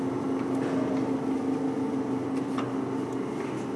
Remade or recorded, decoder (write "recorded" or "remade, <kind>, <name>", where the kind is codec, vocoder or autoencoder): recorded